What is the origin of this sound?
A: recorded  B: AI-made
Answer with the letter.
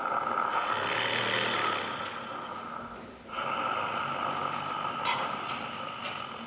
A